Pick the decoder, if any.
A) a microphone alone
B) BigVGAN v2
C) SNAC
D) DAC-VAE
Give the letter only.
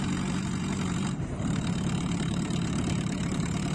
B